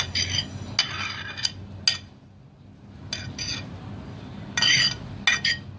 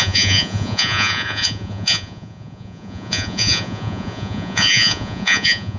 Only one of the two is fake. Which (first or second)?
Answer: second